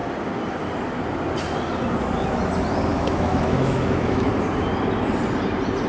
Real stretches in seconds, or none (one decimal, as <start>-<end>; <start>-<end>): 0.0-2.9; 4.3-5.9